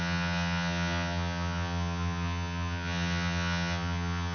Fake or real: fake